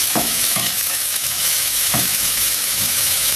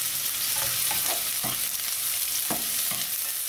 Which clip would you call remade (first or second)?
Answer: first